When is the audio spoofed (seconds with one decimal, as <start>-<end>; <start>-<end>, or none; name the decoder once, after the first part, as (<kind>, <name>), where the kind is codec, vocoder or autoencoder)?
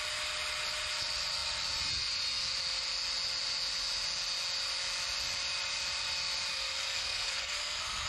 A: 6.5-8.1 (codec, SNAC)